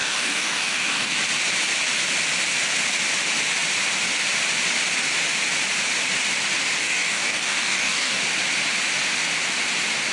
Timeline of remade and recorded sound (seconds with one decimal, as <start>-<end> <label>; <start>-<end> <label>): 0.0-1.1 remade; 1.1-6.8 recorded; 6.8-8.2 remade; 8.2-10.1 recorded